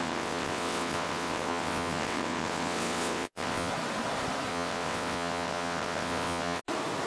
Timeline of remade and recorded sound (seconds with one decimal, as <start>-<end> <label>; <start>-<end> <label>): 0.0-3.7 remade; 3.7-4.5 recorded; 4.5-6.6 remade; 6.6-7.1 recorded

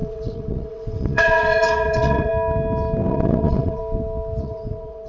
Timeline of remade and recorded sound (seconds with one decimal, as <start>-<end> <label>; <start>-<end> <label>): 0.0-2.3 remade; 2.3-3.1 recorded; 3.1-3.8 remade; 3.8-4.4 recorded; 4.4-5.1 remade